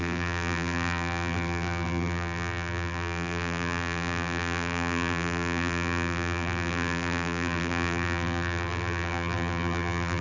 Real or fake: fake